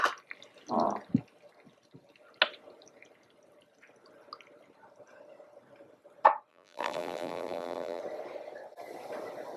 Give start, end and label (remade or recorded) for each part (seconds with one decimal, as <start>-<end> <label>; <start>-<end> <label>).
0.0-6.5 recorded; 6.5-8.0 remade; 8.0-9.6 recorded